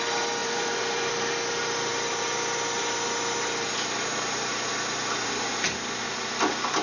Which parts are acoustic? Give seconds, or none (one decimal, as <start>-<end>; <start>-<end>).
0.0-0.4; 1.1-6.8